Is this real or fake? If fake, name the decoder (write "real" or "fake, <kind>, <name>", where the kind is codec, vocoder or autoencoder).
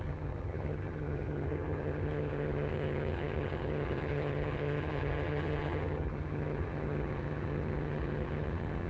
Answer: fake, vocoder, HiFi-GAN